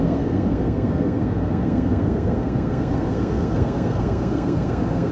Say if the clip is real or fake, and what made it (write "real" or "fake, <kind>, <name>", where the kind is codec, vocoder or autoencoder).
fake, codec, SNAC